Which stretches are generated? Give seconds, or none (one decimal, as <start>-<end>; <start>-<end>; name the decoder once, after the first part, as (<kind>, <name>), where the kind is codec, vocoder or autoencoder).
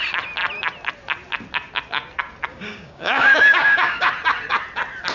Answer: 2.5-4.1 (codec, DAC)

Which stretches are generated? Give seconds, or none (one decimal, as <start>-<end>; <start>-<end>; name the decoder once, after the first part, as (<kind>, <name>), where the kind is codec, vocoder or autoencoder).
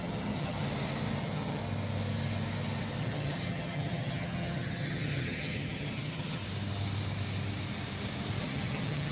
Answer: 0.0-0.6 (vocoder, HiFi-GAN); 1.2-1.6; 3.0-6.4; 8.4-9.1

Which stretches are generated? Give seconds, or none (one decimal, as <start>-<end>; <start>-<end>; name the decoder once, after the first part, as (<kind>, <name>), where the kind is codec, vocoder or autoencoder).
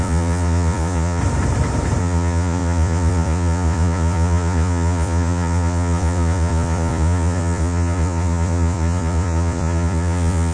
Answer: 0.0-1.2 (vocoder, Vocos); 2.0-10.5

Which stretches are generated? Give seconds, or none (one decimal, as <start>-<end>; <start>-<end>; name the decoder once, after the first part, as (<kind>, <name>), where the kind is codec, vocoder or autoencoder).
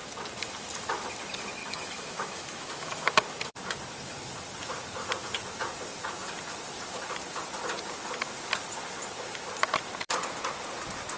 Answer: 1.6-3.1 (autoencoder, DAC-VAE)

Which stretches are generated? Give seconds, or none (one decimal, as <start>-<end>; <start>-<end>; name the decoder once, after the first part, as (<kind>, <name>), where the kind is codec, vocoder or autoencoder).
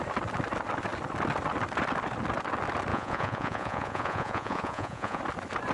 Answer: 2.9-5.2 (vocoder, Vocos)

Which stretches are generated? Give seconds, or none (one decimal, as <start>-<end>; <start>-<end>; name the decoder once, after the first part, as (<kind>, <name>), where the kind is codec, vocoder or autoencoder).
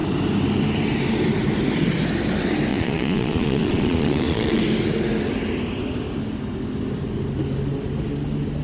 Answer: 2.7-4.6 (vocoder, Vocos)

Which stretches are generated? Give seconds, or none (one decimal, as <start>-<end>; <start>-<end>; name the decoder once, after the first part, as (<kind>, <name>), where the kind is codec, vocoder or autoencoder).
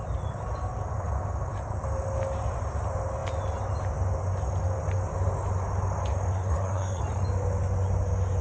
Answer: 6.3-7.0 (codec, SNAC)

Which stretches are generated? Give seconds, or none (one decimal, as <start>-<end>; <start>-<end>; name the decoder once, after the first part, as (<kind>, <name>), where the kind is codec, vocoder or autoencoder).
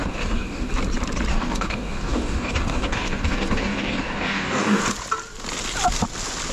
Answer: 0.0-0.7 (codec, DAC); 1.3-4.8